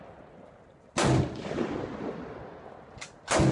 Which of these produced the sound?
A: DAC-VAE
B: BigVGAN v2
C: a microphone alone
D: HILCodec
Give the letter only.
C